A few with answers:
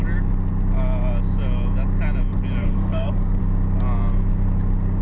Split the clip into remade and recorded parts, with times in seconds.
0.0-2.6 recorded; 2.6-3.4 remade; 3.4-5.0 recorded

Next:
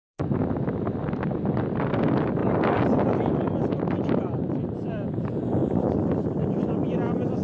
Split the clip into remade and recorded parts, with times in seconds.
0.0-0.4 remade; 0.4-1.0 recorded; 1.0-2.4 remade; 2.4-4.0 recorded; 4.0-7.4 remade

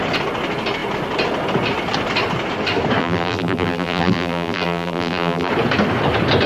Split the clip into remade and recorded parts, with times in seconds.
0.0-3.0 recorded; 3.0-5.5 remade; 5.5-6.5 recorded